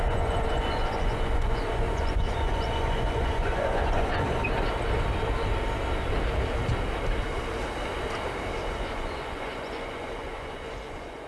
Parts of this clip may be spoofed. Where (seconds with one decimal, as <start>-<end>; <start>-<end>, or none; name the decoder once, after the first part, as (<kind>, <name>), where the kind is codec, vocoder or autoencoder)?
0.0-4.4 (vocoder, Vocos); 8.7-11.3